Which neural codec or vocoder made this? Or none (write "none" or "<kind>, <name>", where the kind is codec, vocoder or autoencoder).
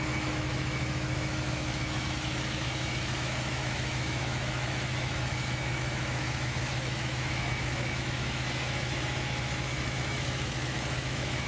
autoencoder, DAC-VAE